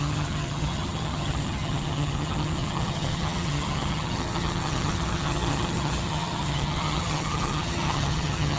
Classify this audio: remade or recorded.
remade